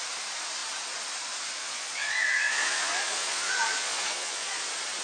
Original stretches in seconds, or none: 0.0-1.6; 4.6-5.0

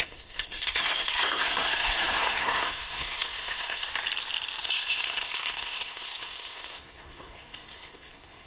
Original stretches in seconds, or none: 3.9-4.6

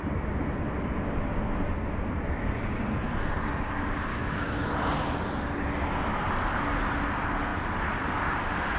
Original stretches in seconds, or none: 0.0-4.1; 4.7-8.8

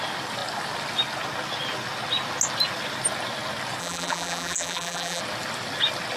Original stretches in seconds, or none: 0.0-3.8; 5.2-6.2

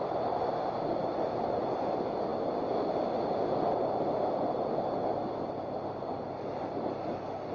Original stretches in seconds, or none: 0.0-7.5